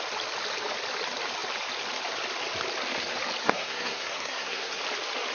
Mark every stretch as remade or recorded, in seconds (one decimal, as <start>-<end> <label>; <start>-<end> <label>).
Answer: 0.0-3.4 recorded; 3.4-4.8 remade; 4.8-5.3 recorded